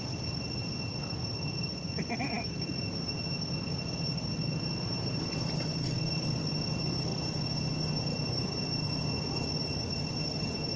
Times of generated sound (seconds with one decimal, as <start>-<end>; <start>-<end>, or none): 1.7-2.6